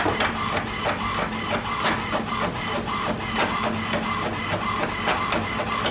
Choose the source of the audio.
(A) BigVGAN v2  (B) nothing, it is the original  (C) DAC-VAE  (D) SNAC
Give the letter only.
B